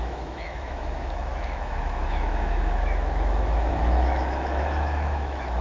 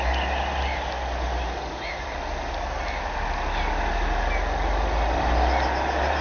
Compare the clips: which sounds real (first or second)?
second